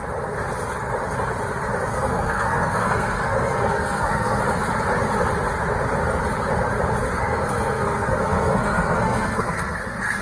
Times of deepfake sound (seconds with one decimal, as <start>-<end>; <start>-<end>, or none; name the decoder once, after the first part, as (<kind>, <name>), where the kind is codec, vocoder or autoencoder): 1.9-4.4 (codec, SNAC); 7.2-10.2